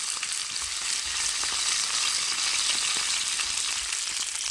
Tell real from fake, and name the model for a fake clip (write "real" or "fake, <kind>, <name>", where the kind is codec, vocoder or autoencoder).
real